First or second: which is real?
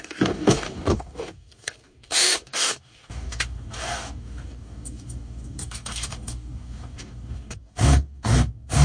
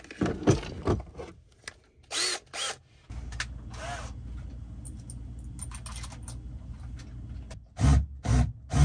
second